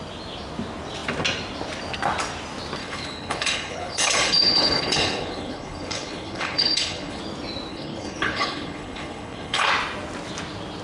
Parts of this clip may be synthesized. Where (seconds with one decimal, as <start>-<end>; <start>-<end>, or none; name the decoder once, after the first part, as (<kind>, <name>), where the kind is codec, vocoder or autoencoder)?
2.8-7.2 (codec, HILCodec); 7.7-9.7